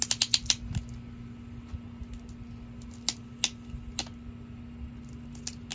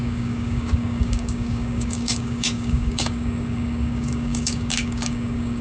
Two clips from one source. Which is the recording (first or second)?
first